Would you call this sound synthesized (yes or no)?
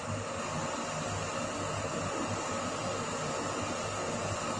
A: no